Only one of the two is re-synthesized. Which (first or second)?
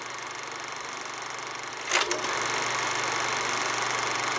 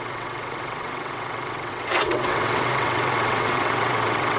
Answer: second